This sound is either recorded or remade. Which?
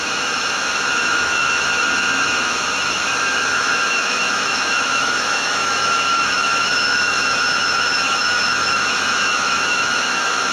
remade